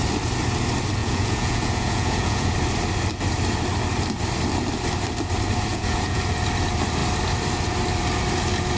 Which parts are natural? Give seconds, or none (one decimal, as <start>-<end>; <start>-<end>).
0.0-1.0; 2.5-5.7; 6.2-8.8